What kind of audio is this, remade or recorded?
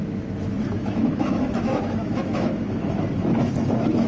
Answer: remade